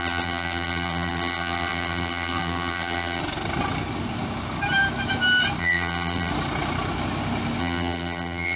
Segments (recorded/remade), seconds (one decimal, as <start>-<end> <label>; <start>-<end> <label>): 0.0-3.2 remade; 3.2-5.6 recorded; 5.6-6.3 remade; 6.3-7.6 recorded; 7.6-8.6 remade